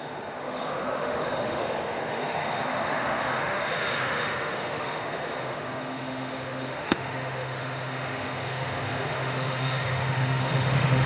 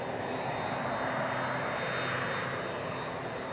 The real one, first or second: second